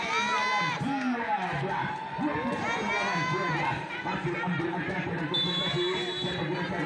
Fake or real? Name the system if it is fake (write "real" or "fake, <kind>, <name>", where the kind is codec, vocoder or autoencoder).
real